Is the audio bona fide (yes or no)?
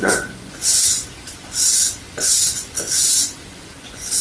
no